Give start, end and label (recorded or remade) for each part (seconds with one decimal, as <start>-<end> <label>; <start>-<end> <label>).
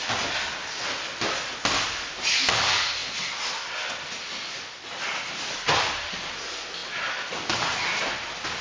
0.0-8.6 recorded